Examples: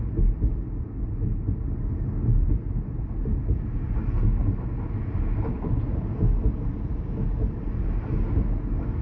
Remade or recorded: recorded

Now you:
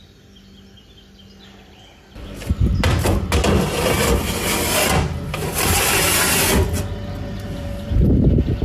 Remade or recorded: recorded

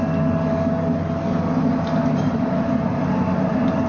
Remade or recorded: recorded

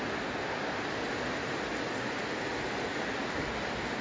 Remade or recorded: recorded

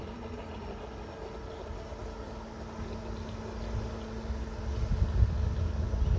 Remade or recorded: recorded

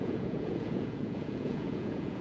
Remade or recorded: remade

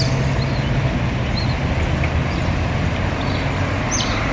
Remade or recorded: recorded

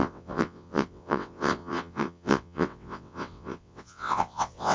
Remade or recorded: remade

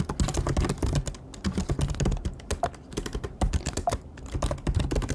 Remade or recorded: recorded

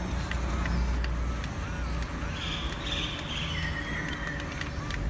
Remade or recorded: recorded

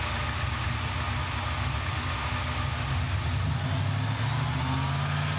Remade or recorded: recorded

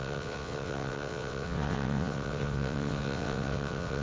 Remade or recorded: remade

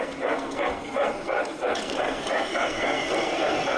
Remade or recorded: remade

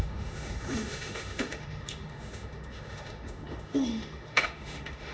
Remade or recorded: remade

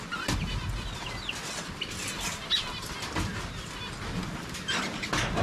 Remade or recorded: recorded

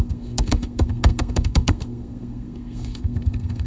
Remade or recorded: remade